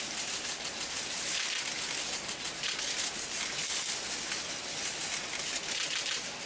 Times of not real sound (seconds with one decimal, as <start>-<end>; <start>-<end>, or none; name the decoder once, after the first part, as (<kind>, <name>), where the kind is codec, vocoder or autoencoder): none